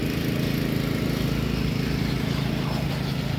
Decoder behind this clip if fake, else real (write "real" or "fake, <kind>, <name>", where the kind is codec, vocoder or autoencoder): real